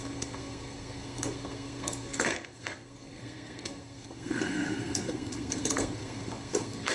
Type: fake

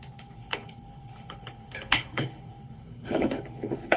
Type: fake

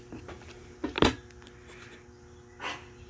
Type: real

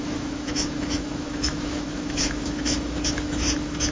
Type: fake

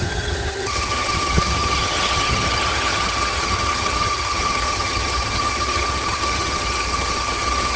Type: fake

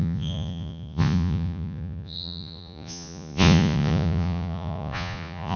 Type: fake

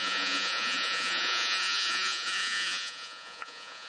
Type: fake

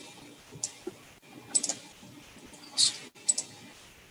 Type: real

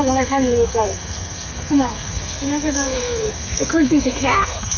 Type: fake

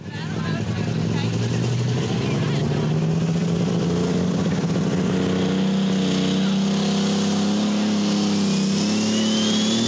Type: real